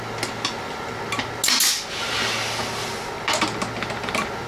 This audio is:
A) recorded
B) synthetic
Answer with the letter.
A